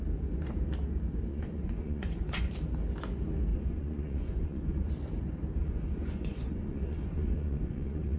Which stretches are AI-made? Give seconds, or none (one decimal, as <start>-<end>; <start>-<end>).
1.3-2.5; 3.5-4.9; 5.6-8.2